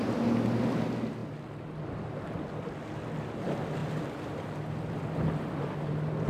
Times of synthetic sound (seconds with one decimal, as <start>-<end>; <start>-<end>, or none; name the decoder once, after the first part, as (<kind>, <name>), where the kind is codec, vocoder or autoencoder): none